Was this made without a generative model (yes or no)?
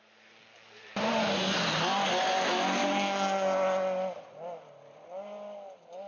yes